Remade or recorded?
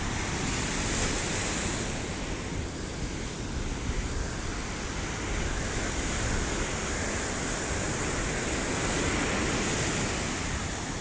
recorded